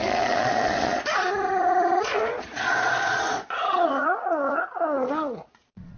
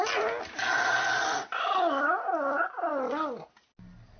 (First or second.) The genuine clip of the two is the second